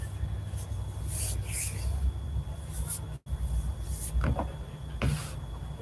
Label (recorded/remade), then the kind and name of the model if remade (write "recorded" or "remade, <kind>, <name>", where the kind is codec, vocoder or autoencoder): recorded